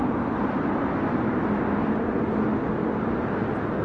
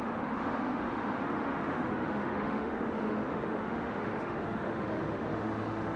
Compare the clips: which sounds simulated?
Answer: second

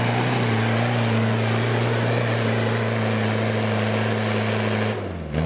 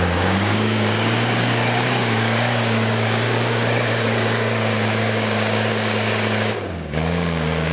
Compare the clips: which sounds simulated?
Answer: second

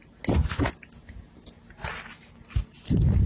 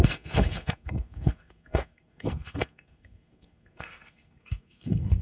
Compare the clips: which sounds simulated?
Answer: second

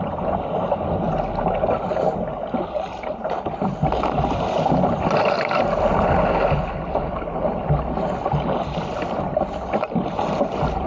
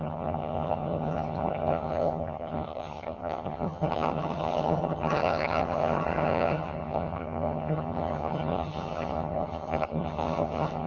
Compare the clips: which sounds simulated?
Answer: second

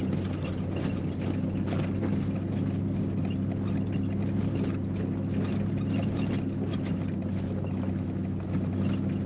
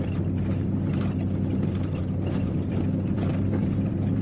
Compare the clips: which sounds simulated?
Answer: second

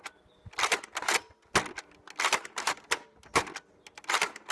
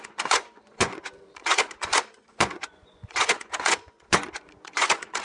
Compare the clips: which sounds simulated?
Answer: second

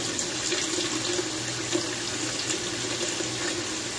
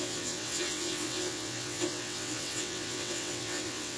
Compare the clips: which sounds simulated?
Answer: second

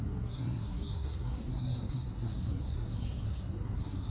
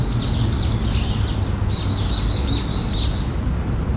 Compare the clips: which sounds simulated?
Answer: first